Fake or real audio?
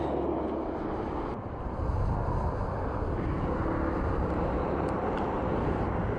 real